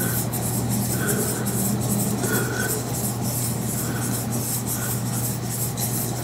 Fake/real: real